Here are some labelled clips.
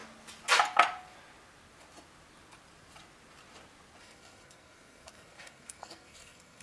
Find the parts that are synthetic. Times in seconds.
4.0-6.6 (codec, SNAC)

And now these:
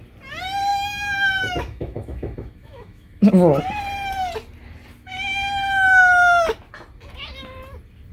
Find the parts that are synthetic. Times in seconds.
0.7-3.3 (autoencoder, DAC-VAE)

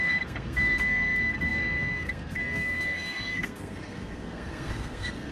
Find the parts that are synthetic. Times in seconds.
0.0-5.3 (codec, SNAC)

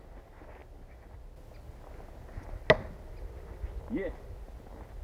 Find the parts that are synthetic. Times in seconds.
none

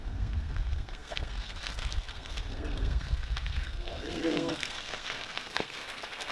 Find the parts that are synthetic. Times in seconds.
0.0-6.3 (codec, SNAC)

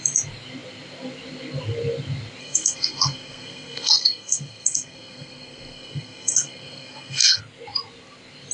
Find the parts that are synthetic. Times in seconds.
2.4-7.4 (codec, SNAC)

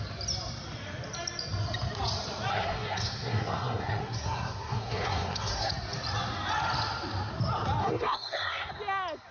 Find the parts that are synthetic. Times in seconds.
2.5-5.7 (codec, SNAC); 7.8-8.7